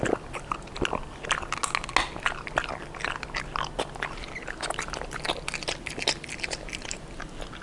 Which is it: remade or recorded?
recorded